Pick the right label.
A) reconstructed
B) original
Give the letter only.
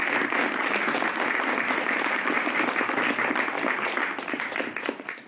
B